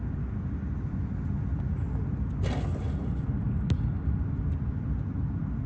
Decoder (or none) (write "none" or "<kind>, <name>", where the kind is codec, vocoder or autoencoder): none